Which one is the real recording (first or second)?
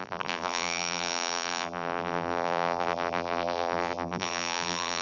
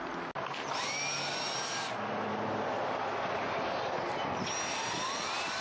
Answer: second